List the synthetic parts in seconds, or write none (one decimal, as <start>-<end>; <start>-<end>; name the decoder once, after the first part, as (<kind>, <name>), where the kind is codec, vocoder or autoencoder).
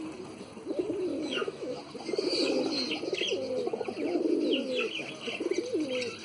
1.1-1.8 (autoencoder, DAC-VAE)